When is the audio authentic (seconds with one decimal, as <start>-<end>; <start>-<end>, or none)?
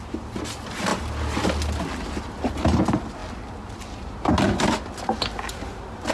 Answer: 0.0-6.1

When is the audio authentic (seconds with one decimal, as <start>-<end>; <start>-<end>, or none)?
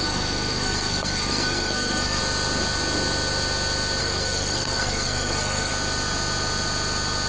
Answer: 2.2-4.0; 5.7-7.3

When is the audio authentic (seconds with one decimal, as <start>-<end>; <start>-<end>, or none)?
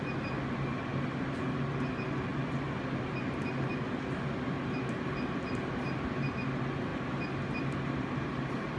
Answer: 0.0-8.8